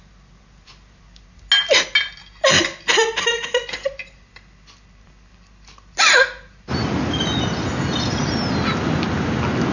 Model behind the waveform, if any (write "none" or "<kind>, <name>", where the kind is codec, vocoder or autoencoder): none